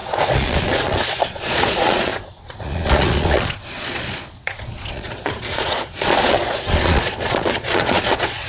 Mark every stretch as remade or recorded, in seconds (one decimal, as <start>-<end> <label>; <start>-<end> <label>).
0.0-8.5 remade